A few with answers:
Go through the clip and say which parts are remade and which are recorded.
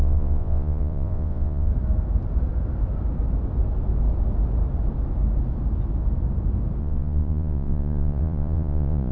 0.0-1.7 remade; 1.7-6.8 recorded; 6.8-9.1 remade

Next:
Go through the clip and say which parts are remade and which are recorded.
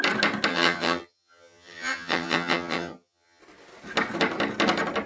0.0-0.5 recorded; 0.5-3.4 remade; 3.4-5.1 recorded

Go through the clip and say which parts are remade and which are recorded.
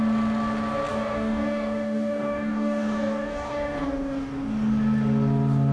0.0-0.9 recorded; 0.9-4.3 remade; 4.3-5.7 recorded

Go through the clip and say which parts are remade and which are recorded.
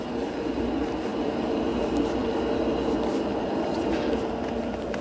0.0-1.1 recorded; 1.1-1.8 remade; 1.8-5.0 recorded